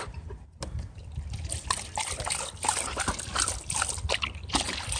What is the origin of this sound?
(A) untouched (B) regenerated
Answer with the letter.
A